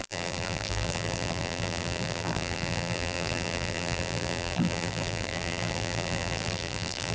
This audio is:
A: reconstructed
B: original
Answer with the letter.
A